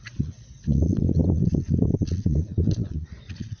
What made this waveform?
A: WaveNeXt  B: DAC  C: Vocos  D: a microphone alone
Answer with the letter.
C